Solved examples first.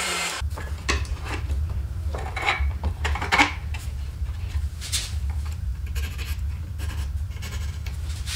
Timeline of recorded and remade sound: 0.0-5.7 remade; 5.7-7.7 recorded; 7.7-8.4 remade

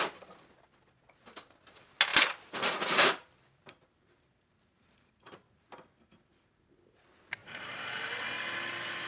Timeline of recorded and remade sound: 0.0-2.1 recorded; 2.1-5.7 remade; 5.7-7.4 recorded; 7.4-8.1 remade; 8.1-9.1 recorded

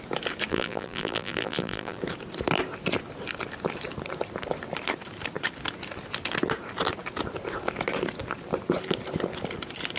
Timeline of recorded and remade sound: 0.0-0.5 recorded; 0.5-2.0 remade; 2.0-10.0 recorded

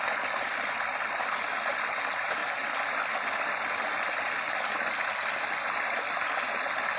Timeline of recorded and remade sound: 0.0-2.4 remade; 2.4-3.7 recorded; 3.7-7.0 remade